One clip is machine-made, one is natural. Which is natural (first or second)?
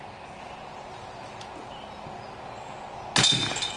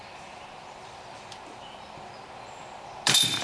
first